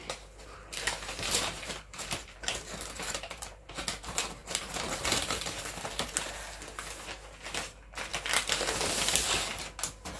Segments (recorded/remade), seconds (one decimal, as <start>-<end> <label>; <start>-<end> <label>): 0.0-0.4 recorded; 0.4-3.7 remade; 3.7-4.4 recorded; 4.4-5.6 remade; 5.6-10.2 recorded